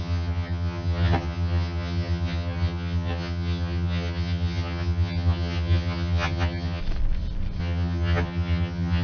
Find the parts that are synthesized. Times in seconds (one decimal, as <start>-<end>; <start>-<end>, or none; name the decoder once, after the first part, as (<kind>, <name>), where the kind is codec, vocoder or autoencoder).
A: 0.0-6.8 (vocoder, HiFi-GAN); 7.6-9.0